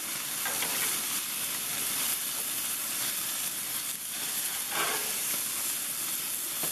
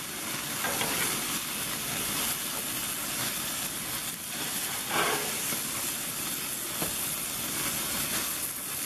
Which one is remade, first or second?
first